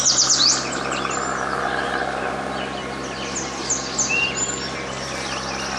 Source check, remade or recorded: recorded